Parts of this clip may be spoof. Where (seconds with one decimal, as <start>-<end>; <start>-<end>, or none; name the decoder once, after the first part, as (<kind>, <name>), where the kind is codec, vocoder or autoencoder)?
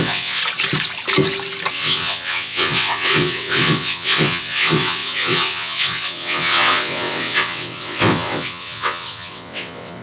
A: 0.0-0.4 (vocoder, WaveNeXt); 1.7-10.0